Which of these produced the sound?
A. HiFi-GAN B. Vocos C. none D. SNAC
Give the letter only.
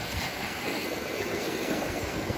D